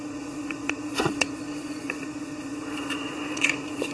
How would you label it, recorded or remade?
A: remade